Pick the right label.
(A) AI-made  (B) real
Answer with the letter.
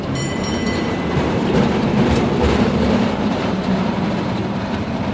A